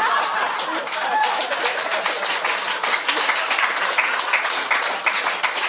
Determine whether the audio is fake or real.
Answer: real